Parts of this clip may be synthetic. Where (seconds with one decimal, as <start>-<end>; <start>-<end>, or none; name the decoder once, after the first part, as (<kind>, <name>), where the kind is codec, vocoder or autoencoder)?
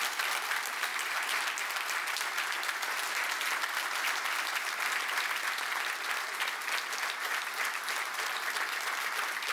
none